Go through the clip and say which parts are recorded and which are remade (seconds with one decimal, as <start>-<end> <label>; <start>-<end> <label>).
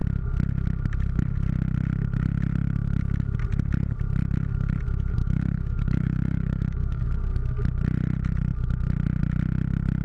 0.0-5.2 recorded; 5.2-7.1 remade; 7.1-10.0 recorded